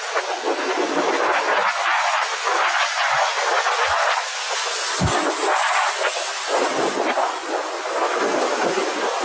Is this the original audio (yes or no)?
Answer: yes